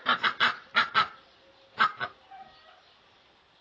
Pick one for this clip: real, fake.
real